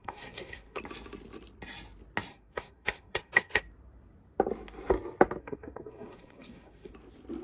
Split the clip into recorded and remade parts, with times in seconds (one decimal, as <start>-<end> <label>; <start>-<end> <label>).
0.0-0.8 remade; 0.8-2.3 recorded; 2.3-3.6 remade; 3.6-5.4 recorded; 5.4-6.9 remade; 6.9-7.4 recorded